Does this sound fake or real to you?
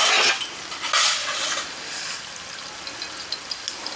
real